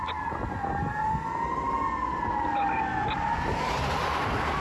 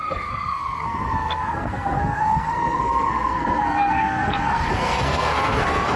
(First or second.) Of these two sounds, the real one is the first